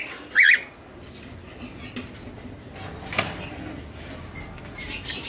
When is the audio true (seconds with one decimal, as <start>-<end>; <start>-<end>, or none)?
0.0-5.3